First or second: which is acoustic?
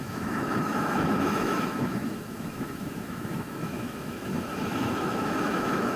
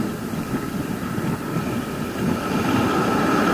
second